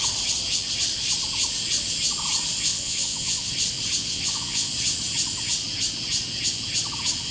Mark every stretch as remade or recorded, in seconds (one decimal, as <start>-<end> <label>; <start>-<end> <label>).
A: 0.0-2.7 recorded; 2.7-3.5 remade; 3.5-4.0 recorded; 4.0-4.7 remade; 4.7-7.3 recorded